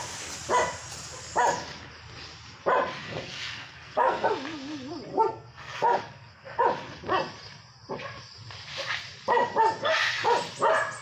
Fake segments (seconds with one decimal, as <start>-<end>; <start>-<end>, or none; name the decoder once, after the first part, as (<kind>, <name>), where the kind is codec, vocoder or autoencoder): 3.0-4.3 (codec, SNAC); 5.1-6.6; 9.8-10.3